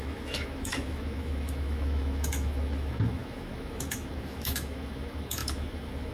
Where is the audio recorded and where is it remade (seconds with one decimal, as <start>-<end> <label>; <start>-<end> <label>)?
0.0-6.1 remade